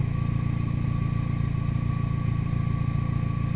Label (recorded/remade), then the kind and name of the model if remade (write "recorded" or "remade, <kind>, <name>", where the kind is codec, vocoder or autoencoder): recorded